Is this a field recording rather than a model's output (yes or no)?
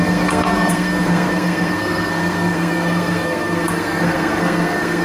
no